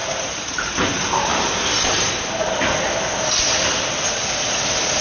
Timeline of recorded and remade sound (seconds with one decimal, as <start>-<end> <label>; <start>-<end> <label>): 0.0-0.6 remade; 0.6-5.0 recorded